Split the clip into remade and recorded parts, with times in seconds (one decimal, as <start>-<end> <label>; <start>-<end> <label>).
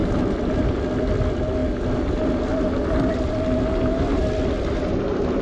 0.0-5.4 recorded